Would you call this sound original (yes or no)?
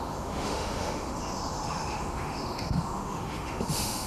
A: no